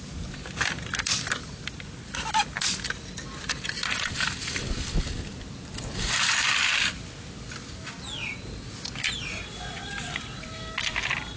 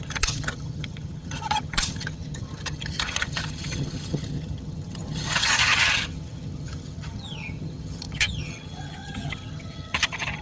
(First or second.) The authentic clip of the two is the first